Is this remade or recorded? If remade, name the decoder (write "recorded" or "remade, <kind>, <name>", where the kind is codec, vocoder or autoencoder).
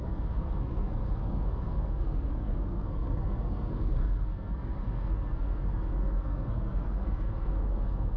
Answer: remade, codec, SNAC